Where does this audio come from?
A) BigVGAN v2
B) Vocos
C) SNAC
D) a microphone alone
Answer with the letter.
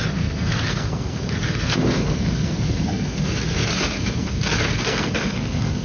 C